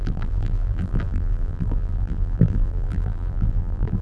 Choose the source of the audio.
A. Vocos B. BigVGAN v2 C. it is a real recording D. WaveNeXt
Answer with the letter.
B